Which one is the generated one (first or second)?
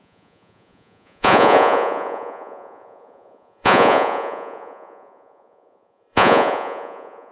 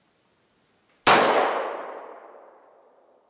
first